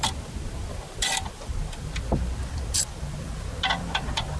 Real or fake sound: fake